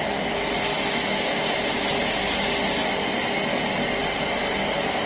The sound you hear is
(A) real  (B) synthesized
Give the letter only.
A